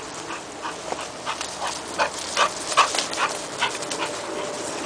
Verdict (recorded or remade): recorded